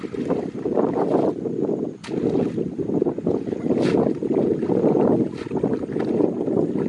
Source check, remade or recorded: recorded